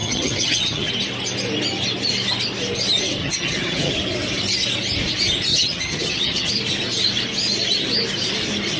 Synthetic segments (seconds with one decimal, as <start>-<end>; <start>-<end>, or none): 0.0-0.9; 3.2-3.9; 5.5-6.5